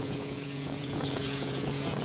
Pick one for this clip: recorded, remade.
remade